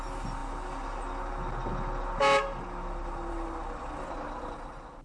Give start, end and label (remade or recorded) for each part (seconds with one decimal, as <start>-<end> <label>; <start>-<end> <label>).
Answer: 0.0-5.0 recorded